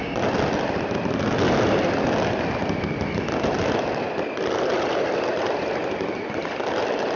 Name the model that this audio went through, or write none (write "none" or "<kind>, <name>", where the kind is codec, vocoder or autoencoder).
none